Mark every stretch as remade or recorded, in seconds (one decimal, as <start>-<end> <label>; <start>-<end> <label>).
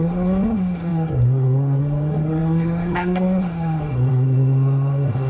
0.0-5.3 remade